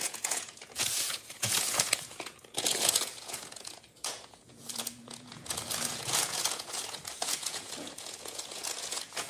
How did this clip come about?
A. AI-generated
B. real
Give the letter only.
A